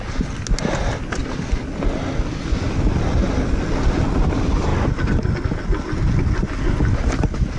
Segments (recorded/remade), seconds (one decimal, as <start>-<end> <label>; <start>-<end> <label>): 0.0-7.6 recorded